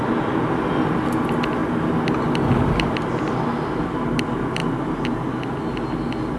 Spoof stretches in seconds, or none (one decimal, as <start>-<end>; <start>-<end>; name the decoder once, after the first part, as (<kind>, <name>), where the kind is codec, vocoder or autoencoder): none